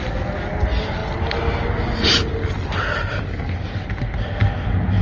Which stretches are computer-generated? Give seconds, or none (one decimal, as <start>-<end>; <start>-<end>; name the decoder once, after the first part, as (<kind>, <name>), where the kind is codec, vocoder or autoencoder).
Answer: none